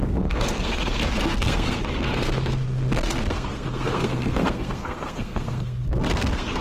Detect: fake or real fake